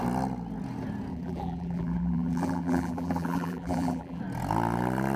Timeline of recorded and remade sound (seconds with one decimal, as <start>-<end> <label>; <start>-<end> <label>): 0.0-1.1 recorded; 1.1-4.2 remade; 4.2-5.2 recorded